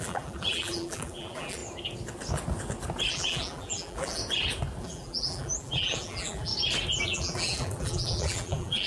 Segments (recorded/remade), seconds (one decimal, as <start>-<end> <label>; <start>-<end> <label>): 0.0-1.6 remade; 1.6-3.1 recorded; 3.1-4.2 remade; 4.2-4.8 recorded; 4.8-6.5 remade; 6.5-7.0 recorded; 7.0-8.9 remade